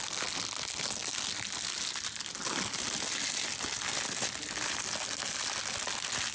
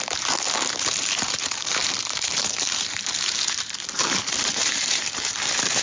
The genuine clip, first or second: first